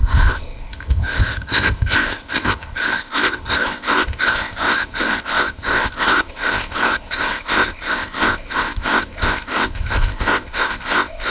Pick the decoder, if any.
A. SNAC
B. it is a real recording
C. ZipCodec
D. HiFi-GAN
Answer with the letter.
C